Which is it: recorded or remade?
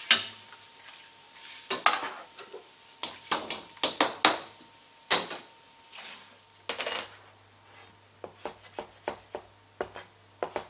recorded